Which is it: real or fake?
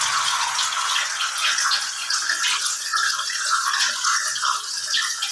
fake